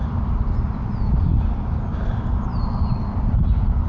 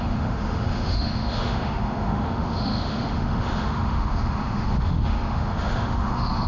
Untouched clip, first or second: first